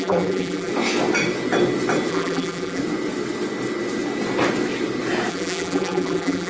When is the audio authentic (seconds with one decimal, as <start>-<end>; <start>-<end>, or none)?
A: 0.7-2.1; 2.8-5.3